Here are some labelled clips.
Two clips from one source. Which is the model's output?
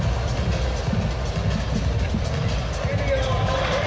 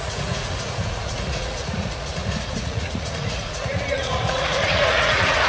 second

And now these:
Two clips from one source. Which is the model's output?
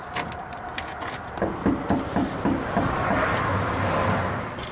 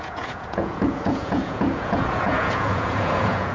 second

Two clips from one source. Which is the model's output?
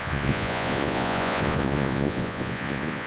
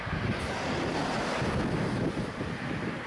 first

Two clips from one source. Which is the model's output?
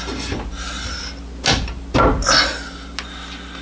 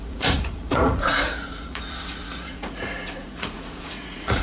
second